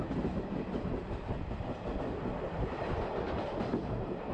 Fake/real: fake